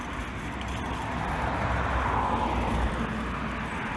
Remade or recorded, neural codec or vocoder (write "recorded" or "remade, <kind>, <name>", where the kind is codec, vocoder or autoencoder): recorded